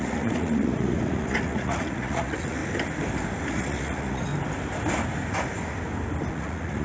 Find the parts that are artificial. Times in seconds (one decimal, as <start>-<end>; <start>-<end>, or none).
0.0-2.6; 3.5-4.3; 6.3-6.8